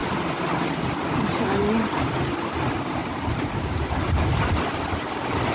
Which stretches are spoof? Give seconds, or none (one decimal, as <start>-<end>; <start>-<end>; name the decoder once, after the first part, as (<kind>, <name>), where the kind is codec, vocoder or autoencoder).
1.0-1.6 (vocoder, BigVGAN v2); 3.0-4.2